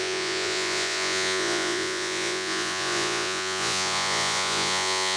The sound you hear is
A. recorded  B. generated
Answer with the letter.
B